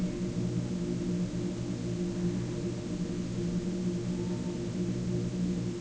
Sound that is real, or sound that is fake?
real